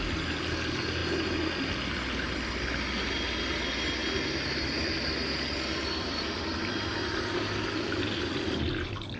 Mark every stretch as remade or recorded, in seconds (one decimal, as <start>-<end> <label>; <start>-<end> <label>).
0.0-9.2 recorded